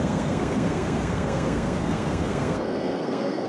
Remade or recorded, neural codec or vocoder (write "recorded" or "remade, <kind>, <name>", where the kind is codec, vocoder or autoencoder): remade, codec, SNAC